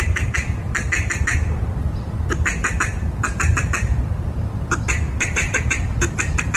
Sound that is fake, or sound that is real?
fake